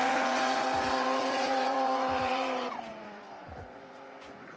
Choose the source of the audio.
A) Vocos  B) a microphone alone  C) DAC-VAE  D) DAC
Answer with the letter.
A